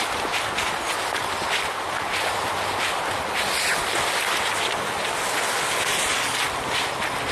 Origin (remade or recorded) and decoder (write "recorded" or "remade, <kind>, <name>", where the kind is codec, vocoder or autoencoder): recorded